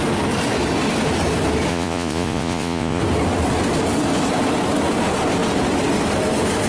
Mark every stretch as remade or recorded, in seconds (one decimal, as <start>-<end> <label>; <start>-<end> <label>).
0.0-1.7 recorded; 1.7-3.0 remade; 3.0-6.7 recorded